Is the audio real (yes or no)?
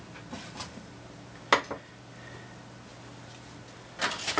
yes